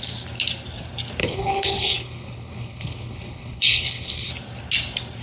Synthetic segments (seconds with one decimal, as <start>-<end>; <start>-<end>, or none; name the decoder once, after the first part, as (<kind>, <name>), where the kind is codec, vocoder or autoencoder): 1.2-4.3 (codec, HILCodec)

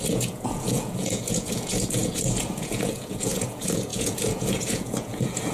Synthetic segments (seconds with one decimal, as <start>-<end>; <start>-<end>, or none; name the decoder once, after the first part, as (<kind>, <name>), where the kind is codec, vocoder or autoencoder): 0.0-5.5 (vocoder, Vocos)

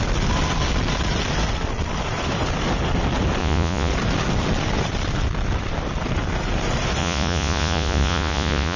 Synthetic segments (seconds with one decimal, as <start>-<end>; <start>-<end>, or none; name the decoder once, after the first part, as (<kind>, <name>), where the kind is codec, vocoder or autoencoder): 3.4-3.9 (vocoder, Vocos); 7.0-8.8

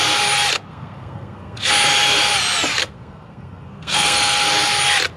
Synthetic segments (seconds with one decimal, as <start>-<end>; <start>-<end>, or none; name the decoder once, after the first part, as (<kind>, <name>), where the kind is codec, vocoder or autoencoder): 0.7-1.7 (codec, SNAC); 2.8-4.5

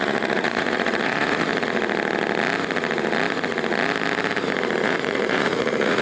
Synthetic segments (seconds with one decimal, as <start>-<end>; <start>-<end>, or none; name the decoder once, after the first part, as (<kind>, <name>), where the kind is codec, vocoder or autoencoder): 0.0-1.5 (vocoder, Vocos); 4.8-6.0

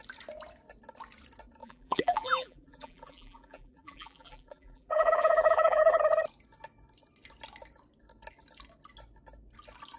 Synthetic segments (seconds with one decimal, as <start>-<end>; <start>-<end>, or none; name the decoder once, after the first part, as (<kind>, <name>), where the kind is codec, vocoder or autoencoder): 1.6-6.0 (vocoder, BigVGAN v2)

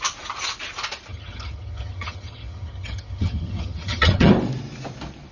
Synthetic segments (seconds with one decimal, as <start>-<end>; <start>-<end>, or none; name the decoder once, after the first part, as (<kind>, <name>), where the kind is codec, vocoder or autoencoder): 1.1-4.3 (vocoder, HiFi-GAN)

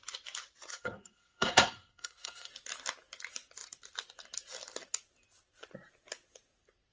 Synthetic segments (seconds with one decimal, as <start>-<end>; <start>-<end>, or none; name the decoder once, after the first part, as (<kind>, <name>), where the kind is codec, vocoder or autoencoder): 0.7-2.5 (codec, SNAC)